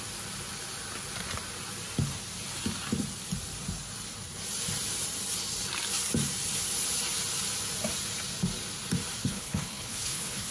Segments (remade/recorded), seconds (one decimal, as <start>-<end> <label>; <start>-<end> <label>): 0.0-9.2 recorded; 9.2-10.5 remade